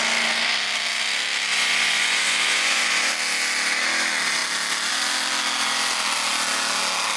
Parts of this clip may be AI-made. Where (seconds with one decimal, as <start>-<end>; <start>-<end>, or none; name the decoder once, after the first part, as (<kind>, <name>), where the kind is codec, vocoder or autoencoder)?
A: 1.5-3.1 (vocoder, Vocos)